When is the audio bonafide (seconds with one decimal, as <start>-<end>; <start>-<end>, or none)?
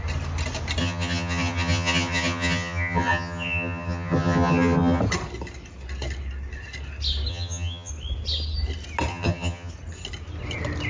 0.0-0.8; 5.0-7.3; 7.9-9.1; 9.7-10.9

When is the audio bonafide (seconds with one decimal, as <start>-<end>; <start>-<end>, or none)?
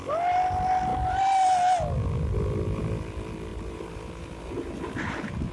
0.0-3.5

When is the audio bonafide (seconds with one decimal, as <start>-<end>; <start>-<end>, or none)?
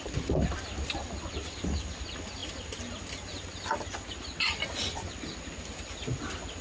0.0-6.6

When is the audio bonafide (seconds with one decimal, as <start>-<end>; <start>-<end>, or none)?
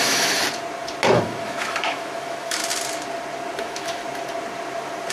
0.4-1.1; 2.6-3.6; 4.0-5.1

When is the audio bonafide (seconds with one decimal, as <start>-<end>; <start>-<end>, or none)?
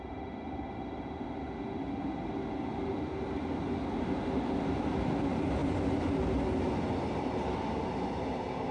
0.0-8.7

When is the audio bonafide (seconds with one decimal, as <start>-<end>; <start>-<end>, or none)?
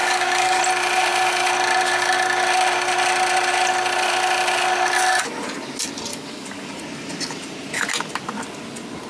0.6-6.1; 6.8-9.1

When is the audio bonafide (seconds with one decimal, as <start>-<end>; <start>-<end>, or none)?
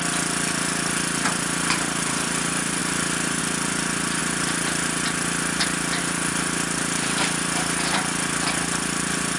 0.0-2.8; 3.4-9.4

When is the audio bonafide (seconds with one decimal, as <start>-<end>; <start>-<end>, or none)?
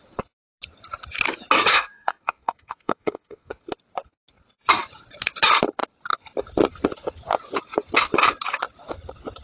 0.0-1.7; 3.6-9.4